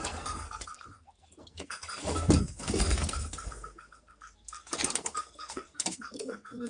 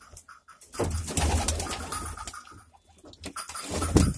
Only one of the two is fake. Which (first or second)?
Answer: first